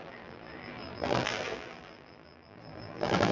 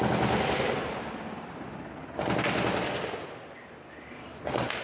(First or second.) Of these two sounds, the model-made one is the first